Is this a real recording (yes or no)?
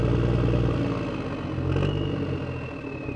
yes